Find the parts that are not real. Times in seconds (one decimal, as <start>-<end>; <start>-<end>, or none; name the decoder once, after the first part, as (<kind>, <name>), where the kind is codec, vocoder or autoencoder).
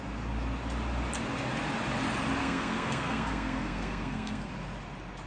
2.4-4.5 (codec, SNAC)